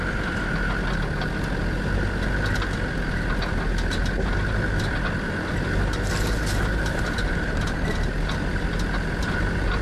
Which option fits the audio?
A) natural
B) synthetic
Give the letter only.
A